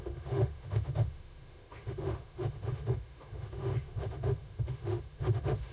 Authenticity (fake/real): fake